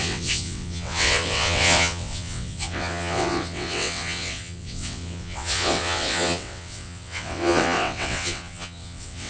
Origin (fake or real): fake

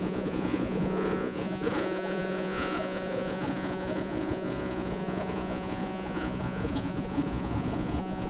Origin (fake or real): fake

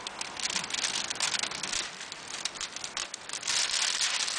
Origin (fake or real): real